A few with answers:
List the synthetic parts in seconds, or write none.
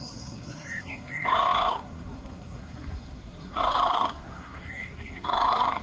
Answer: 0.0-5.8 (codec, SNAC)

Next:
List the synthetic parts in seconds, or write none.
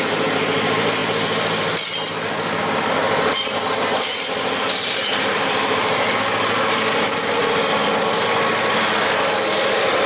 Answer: none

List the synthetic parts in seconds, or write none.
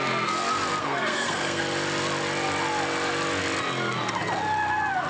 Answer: 0.8-1.6 (codec, SNAC)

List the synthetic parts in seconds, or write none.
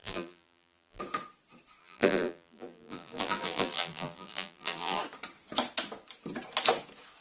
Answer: 0.0-1.0 (vocoder, BigVGAN v2); 1.8-5.0